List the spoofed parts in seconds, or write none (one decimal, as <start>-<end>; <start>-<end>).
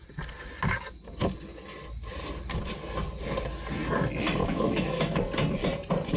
4.4-5.2